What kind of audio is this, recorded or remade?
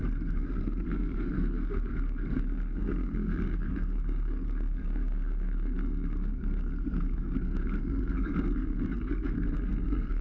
remade